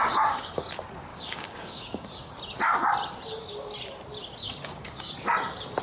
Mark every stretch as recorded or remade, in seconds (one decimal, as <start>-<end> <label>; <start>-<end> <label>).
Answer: 0.0-0.6 remade; 0.6-1.1 recorded; 1.1-2.3 remade; 2.3-4.4 recorded; 4.4-5.1 remade; 5.1-5.8 recorded